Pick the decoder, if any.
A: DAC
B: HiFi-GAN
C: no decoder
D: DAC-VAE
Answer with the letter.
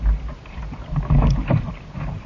C